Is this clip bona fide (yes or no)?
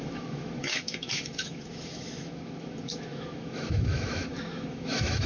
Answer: no